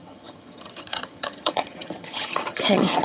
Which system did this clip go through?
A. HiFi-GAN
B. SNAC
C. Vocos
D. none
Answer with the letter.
A